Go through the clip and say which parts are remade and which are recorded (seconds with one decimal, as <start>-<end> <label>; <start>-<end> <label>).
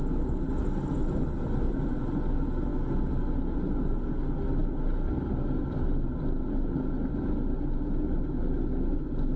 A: 0.0-0.6 recorded; 0.6-2.0 remade; 2.0-9.4 recorded